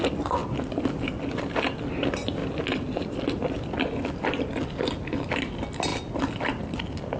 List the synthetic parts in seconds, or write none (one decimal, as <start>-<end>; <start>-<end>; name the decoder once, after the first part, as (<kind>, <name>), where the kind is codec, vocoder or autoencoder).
none